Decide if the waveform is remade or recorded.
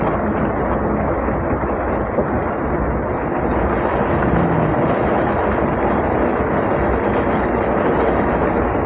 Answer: recorded